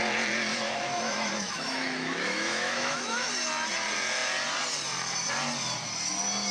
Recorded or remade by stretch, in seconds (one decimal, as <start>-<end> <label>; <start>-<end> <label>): 0.0-0.5 recorded; 0.5-3.3 remade; 3.3-6.5 recorded